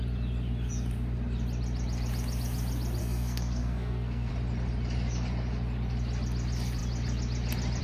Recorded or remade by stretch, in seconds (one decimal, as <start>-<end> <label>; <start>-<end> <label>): 0.0-3.0 recorded; 3.0-4.3 remade; 4.3-7.8 recorded